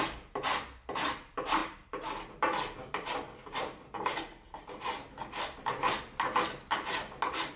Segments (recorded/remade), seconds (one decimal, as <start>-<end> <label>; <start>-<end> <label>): 0.0-7.6 recorded